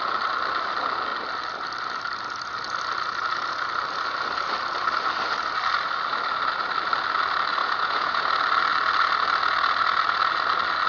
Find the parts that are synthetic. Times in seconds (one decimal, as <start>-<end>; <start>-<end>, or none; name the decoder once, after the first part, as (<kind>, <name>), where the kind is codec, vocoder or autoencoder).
7.6-8.3 (vocoder, Vocos)